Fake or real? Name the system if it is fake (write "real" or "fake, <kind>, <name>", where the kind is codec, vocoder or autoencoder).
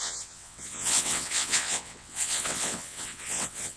fake, vocoder, WaveNeXt